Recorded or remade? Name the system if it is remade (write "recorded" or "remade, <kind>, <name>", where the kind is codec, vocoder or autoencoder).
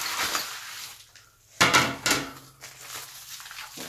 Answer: recorded